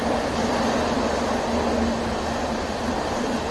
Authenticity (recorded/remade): recorded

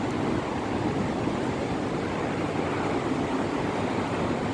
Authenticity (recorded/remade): recorded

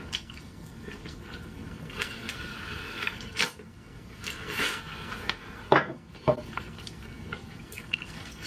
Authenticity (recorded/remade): remade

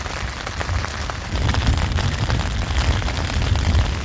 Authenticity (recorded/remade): recorded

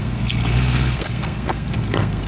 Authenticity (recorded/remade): remade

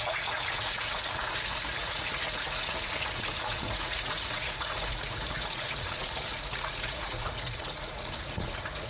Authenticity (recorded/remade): remade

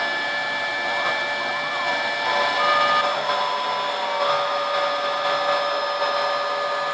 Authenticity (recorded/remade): recorded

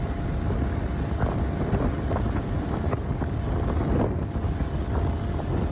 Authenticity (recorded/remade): recorded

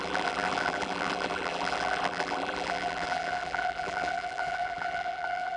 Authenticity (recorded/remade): remade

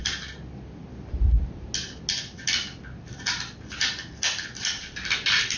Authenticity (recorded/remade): recorded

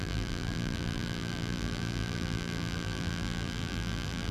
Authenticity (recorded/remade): remade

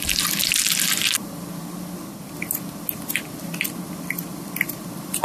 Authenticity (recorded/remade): remade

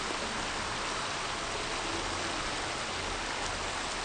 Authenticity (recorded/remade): recorded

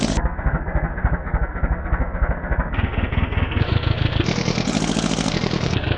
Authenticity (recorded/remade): remade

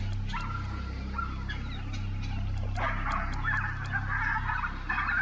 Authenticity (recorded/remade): recorded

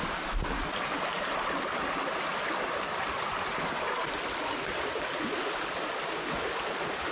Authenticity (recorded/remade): recorded